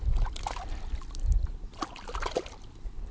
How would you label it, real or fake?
real